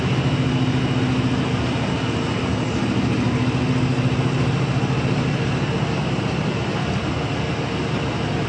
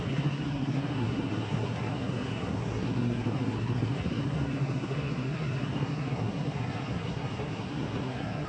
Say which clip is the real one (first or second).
first